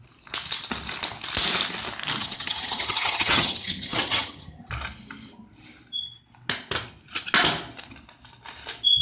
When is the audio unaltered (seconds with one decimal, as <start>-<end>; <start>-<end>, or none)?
0.0-2.2; 4.7-9.0